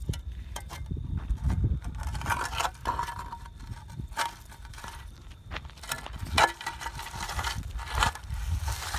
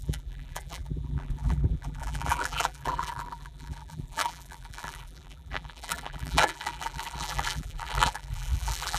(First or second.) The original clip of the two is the first